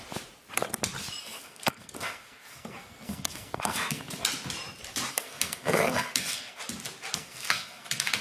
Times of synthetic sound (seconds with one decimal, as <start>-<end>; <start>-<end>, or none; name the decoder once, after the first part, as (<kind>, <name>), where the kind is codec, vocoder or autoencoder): 1.2-4.2 (codec, SNAC); 5.1-6.6; 7.1-8.2